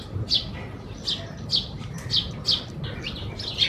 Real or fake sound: real